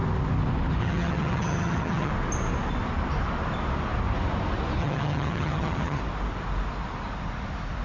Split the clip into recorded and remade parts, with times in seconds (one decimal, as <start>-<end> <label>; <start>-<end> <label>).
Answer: 0.0-0.8 recorded; 0.8-2.1 remade; 2.1-4.8 recorded; 4.8-6.0 remade; 6.0-7.8 recorded